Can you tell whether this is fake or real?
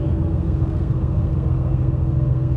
fake